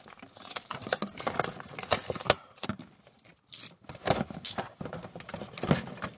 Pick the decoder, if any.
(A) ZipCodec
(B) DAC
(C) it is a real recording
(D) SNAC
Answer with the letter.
C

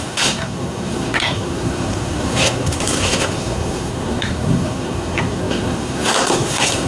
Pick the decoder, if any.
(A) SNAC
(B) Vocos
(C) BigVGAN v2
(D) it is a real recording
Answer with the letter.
A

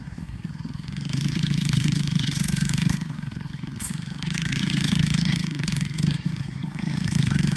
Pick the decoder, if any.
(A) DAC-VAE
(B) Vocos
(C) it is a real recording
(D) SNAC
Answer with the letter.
D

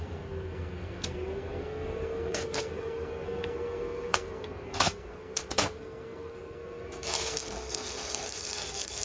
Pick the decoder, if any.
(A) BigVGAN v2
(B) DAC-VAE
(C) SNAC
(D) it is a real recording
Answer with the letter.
C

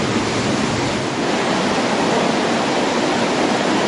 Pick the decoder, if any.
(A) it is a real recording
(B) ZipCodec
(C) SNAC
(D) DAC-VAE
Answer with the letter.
A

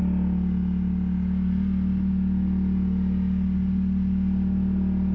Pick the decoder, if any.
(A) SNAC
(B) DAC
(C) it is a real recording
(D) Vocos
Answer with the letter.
C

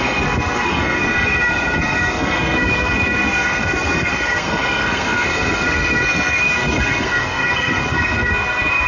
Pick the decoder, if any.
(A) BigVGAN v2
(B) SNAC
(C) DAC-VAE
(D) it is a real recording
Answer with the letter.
B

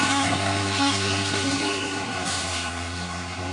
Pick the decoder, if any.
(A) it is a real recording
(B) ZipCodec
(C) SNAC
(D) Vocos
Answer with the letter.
C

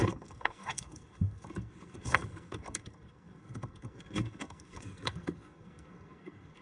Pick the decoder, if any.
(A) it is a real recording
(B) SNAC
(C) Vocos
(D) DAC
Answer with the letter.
B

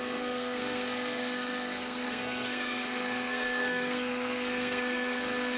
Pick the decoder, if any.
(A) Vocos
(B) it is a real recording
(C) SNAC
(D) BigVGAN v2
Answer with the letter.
C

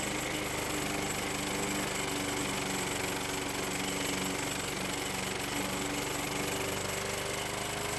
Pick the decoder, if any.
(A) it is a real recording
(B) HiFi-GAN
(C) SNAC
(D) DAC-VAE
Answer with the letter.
A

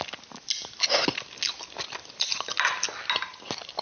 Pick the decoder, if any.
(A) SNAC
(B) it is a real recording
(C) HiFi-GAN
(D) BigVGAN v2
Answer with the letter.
B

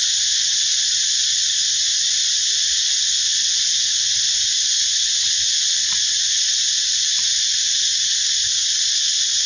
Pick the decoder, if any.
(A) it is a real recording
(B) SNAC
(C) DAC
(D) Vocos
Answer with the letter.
A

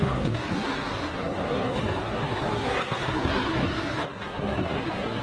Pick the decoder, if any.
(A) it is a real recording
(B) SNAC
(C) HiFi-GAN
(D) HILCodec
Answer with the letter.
B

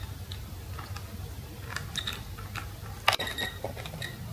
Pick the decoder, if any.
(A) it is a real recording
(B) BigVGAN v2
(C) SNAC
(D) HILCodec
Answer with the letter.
A